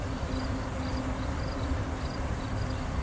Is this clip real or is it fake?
real